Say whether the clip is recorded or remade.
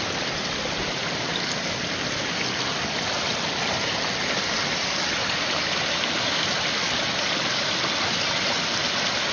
recorded